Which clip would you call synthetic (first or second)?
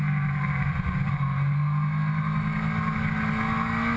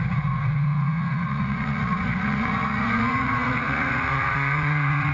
second